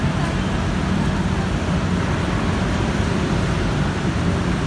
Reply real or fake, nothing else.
real